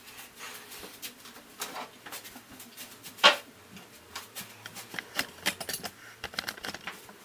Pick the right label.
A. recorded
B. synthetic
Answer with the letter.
B